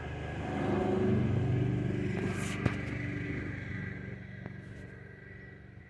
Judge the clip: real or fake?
real